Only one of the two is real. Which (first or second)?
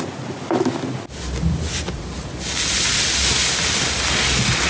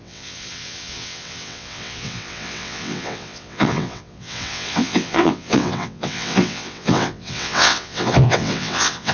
first